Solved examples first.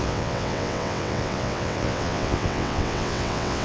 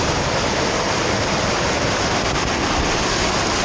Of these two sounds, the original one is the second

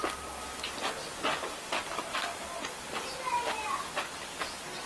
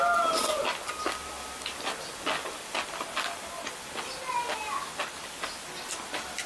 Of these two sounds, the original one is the second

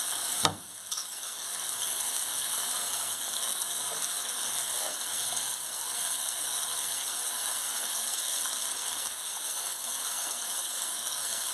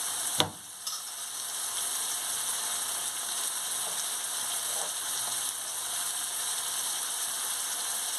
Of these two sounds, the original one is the second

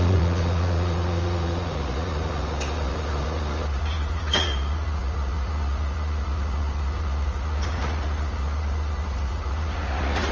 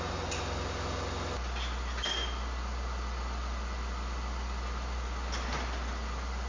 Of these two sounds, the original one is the second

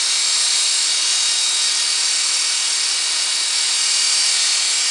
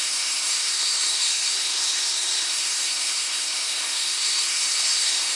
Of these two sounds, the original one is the first